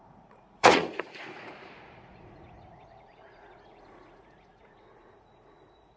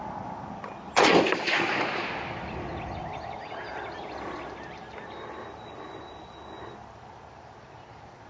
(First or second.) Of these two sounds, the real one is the second